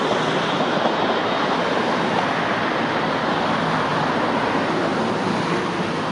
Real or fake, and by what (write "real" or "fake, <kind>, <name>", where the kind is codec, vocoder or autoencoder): real